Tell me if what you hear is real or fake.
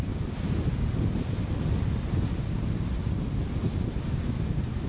real